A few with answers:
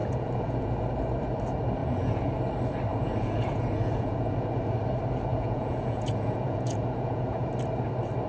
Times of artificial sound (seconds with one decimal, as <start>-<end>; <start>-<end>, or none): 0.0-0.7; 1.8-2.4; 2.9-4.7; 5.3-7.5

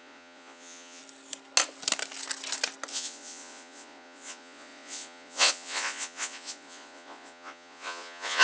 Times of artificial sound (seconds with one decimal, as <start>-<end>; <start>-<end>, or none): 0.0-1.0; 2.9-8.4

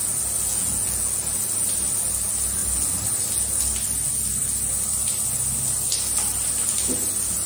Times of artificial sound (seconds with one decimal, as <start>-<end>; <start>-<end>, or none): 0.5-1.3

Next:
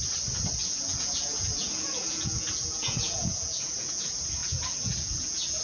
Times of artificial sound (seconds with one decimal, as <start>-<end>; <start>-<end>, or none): 0.6-4.0; 4.4-5.6